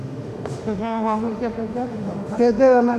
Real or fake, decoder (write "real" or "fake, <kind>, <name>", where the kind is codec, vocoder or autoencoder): fake, autoencoder, DAC-VAE